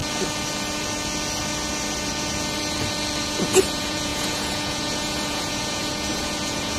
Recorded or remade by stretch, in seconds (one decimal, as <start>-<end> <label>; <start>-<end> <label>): 0.0-3.2 recorded; 3.2-6.8 remade